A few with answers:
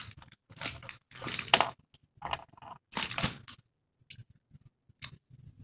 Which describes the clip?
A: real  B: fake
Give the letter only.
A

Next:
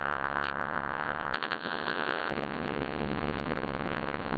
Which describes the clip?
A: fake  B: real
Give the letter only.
A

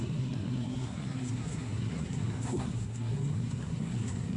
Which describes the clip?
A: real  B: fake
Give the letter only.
B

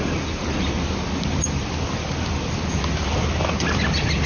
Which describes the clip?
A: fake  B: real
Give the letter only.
B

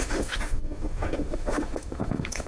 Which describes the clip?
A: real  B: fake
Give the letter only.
B